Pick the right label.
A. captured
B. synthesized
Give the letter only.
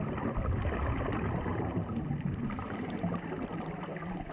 A